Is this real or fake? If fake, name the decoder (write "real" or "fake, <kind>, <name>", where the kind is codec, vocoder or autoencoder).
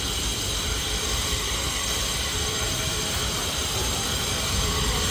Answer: fake, vocoder, BigVGAN v2